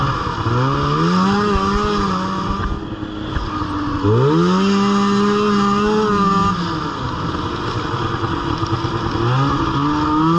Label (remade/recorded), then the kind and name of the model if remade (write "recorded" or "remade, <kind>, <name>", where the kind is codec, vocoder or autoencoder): recorded